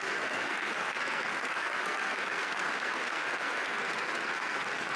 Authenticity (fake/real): fake